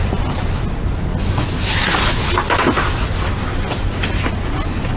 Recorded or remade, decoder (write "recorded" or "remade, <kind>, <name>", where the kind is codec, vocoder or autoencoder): recorded